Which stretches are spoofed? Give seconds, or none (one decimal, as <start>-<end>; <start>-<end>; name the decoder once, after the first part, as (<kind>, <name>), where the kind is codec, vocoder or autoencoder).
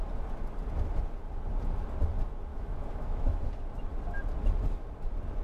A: 2.5-3.5 (autoencoder, DAC-VAE)